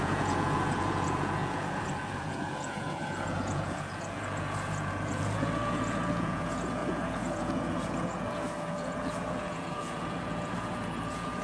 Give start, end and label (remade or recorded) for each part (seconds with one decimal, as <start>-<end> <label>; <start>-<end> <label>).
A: 0.0-11.4 remade